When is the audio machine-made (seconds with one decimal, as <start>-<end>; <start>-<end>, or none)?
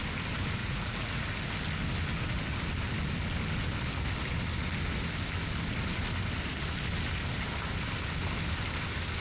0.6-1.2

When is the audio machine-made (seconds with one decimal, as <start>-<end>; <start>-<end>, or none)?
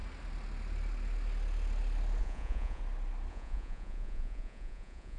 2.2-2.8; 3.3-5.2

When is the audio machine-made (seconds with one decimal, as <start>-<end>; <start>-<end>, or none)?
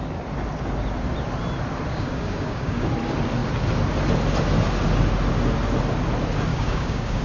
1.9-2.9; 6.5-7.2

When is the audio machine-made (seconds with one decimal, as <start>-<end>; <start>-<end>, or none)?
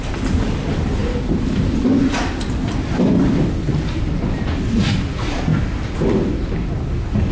none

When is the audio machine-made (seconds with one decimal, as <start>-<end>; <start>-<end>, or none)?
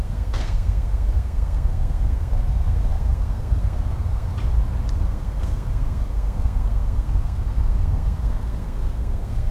0.0-4.3; 5.0-9.5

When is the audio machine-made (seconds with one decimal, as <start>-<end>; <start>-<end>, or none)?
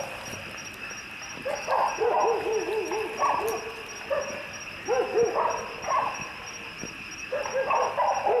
none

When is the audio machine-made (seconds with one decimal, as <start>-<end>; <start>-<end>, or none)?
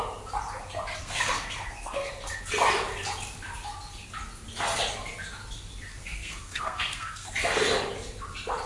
1.0-2.1; 5.9-7.3